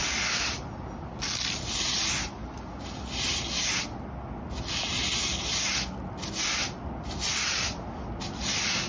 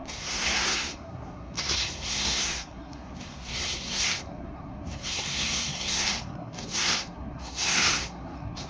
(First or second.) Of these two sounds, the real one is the first